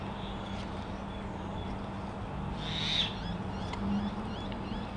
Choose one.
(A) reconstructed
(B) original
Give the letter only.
B